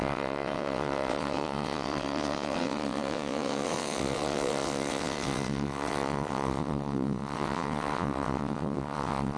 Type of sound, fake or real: fake